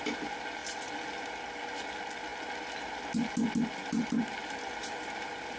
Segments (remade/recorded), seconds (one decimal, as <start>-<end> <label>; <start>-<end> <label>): 0.0-5.6 recorded